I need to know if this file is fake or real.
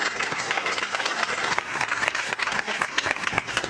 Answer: fake